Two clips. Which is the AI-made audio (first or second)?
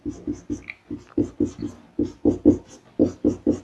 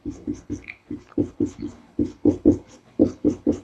second